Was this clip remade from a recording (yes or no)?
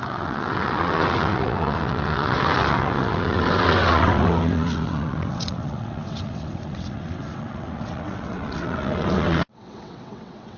yes